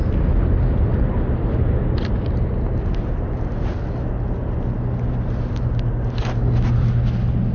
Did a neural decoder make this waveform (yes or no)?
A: no